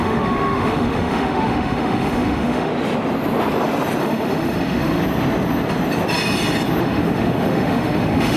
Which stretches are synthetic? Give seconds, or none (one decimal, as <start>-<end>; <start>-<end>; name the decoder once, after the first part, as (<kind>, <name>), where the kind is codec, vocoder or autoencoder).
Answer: 0.0-2.7 (autoencoder, DAC-VAE); 4.0-5.0; 6.8-8.4